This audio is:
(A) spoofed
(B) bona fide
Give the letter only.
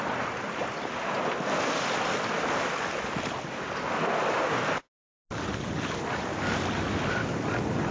B